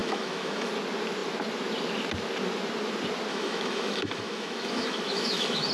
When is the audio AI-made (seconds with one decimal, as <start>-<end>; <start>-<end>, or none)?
0.0-0.7; 3.3-5.7